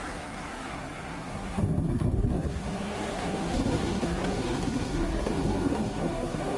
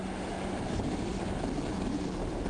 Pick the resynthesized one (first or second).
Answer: first